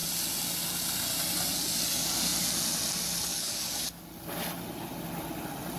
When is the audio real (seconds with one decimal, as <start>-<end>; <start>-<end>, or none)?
0.0-3.3; 4.0-5.8